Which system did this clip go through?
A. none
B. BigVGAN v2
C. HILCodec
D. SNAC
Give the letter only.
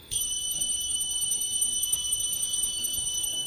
D